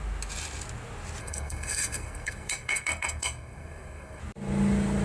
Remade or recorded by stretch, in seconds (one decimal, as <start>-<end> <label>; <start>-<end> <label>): 0.0-1.2 recorded; 1.2-4.2 remade; 4.2-5.0 recorded